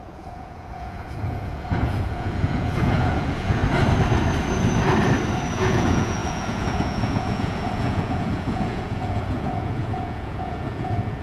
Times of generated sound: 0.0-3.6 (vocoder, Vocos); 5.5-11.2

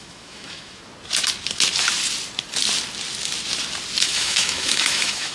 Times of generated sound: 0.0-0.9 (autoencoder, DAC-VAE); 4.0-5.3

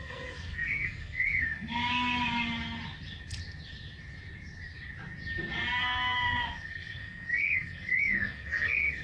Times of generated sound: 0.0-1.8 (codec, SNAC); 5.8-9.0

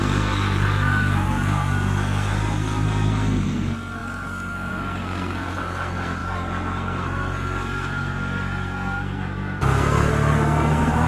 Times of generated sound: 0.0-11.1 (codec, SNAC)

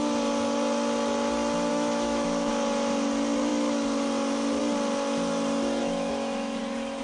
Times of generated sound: 1.7-2.5 (autoencoder, DAC-VAE); 5.8-6.6